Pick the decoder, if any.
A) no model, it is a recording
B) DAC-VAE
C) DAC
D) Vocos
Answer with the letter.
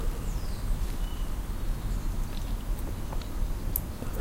A